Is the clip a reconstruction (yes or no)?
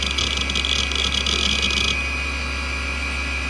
no